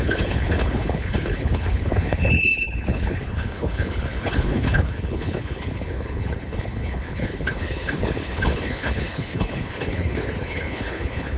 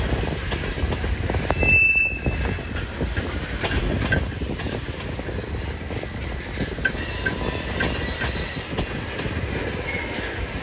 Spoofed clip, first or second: first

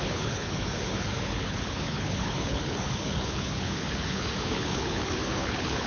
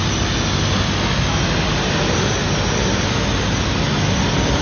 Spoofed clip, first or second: first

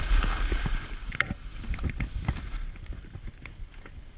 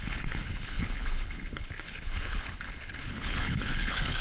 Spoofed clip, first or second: second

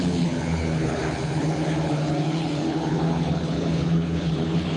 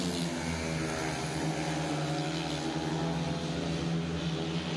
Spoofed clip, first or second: first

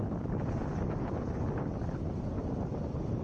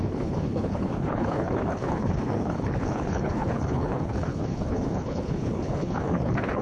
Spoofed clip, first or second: second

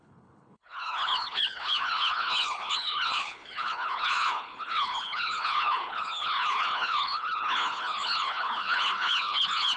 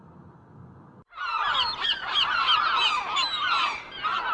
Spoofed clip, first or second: first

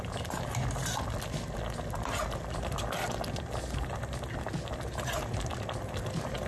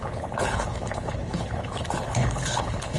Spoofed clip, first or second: second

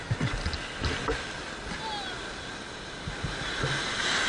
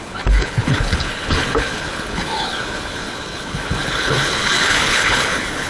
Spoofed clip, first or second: second